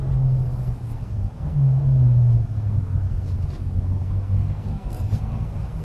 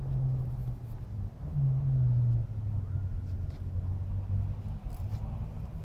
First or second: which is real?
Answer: second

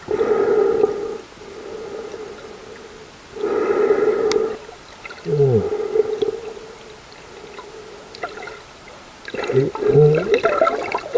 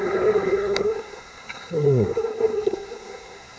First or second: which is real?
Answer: first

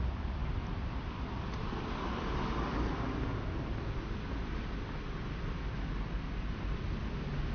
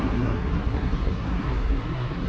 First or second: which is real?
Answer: first